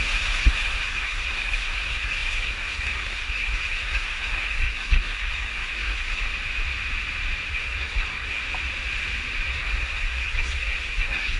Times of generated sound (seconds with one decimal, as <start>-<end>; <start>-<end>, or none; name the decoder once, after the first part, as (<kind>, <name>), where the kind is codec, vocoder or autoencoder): 0.0-6.3 (codec, SNAC); 7.5-8.4; 9.5-11.4